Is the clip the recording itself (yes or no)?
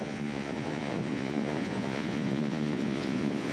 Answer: no